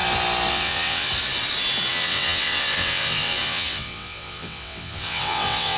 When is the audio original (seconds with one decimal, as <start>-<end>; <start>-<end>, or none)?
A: 0.0-0.5; 1.1-1.9